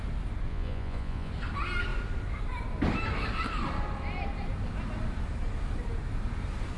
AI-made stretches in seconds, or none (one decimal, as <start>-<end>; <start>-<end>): 0.5-1.3